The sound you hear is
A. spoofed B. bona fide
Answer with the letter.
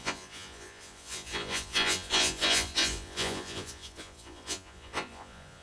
A